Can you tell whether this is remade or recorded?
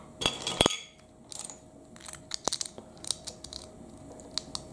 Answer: recorded